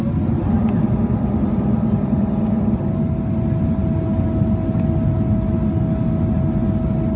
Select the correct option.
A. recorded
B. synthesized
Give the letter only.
A